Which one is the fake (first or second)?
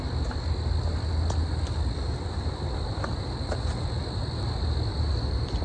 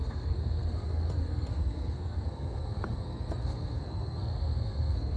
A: second